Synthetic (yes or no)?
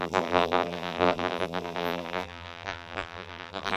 yes